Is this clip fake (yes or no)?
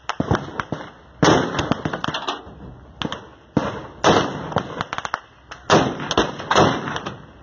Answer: no